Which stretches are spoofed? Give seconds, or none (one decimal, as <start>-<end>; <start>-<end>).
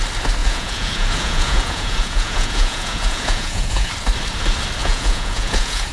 0.4-3.9; 4.8-5.9